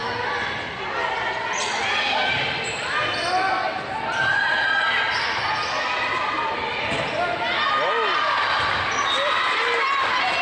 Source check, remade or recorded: recorded